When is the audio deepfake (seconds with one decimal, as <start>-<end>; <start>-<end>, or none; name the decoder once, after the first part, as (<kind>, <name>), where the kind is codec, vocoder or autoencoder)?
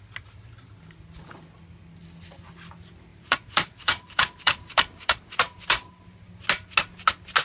3.1-6.3 (vocoder, BigVGAN v2)